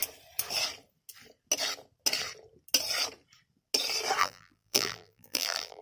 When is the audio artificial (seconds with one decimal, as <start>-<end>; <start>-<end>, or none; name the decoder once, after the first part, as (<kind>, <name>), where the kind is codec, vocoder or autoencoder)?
4.2-5.8 (vocoder, BigVGAN v2)